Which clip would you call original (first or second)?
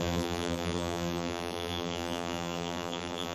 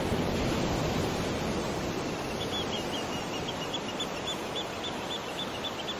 second